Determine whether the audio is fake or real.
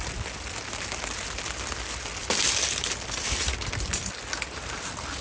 real